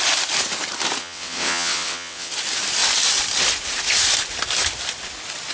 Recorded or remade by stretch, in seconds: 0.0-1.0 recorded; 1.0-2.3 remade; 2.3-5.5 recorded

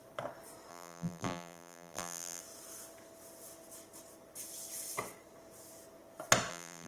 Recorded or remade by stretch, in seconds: 0.0-0.7 recorded; 0.7-2.4 remade; 2.4-6.5 recorded; 6.5-6.9 remade

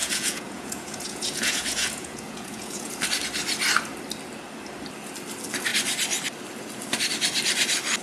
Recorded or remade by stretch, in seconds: 0.0-2.9 remade; 2.9-8.0 recorded

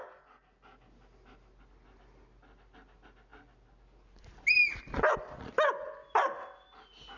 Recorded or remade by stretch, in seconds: 0.0-7.2 recorded